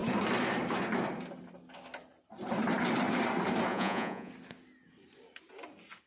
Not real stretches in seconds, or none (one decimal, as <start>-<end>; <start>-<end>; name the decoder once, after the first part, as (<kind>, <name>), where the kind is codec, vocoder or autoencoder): 3.7-4.3 (vocoder, Vocos)